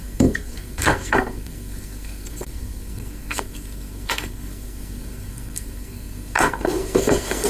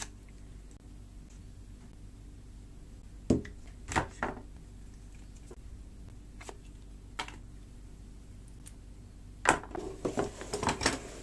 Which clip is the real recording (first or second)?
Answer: second